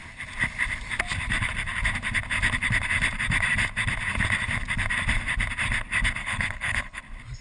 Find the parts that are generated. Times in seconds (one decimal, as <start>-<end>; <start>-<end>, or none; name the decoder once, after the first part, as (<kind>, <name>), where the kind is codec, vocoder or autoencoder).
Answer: 6.2-7.0 (codec, HILCodec)